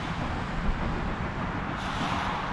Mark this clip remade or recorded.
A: recorded